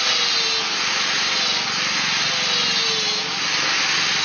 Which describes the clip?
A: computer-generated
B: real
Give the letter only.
B